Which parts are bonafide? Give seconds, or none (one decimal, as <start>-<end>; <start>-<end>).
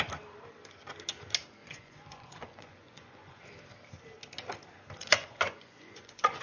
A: 0.0-1.6; 3.4-5.0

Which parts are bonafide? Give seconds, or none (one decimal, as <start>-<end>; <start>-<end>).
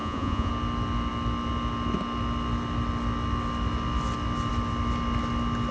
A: 0.5-5.7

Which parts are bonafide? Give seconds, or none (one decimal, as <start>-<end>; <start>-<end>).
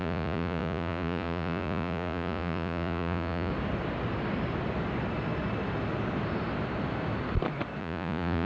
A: 3.5-7.8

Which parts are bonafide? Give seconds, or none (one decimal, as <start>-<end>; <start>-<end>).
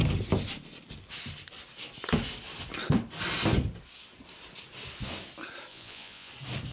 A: 0.0-5.7; 6.3-6.7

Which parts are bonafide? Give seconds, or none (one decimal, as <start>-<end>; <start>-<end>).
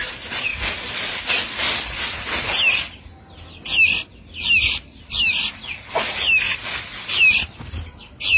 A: 0.0-8.4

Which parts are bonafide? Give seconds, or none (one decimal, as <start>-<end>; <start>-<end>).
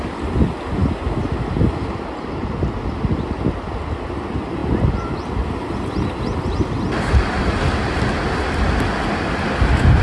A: 0.0-10.0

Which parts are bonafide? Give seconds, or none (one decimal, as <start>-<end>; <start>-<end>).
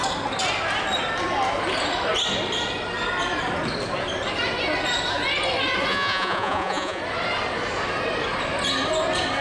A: 0.0-5.9; 7.0-9.4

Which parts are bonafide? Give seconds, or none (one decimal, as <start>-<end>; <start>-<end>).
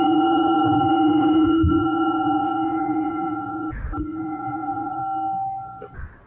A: 5.0-6.3